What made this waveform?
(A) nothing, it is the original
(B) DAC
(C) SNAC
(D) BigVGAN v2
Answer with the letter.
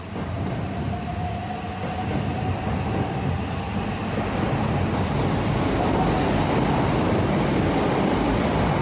A